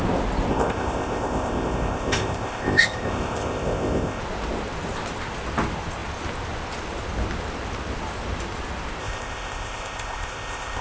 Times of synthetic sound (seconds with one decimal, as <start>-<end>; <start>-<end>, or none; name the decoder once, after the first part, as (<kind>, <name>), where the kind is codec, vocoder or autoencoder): 0.5-4.2 (codec, ZipCodec); 9.0-10.8